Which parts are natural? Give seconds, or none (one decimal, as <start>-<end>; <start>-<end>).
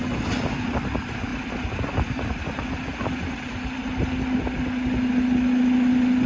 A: 0.0-6.3